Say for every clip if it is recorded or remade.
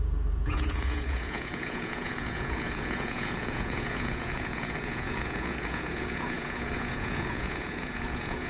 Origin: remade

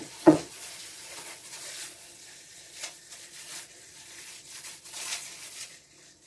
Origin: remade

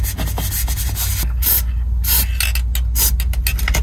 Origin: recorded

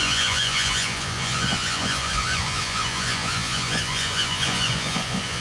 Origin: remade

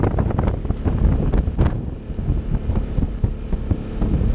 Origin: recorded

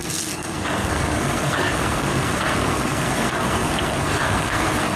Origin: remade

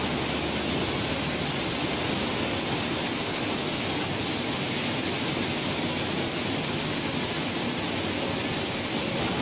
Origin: recorded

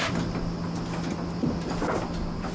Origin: recorded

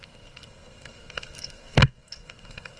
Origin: remade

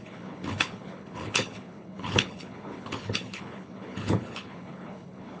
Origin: remade